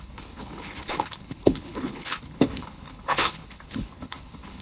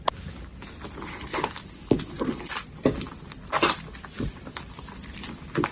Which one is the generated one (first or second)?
first